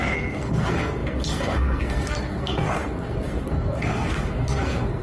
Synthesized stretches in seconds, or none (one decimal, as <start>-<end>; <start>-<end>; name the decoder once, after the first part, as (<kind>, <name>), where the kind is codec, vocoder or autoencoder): 0.0-5.0 (codec, SNAC)